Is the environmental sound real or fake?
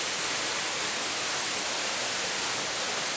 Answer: real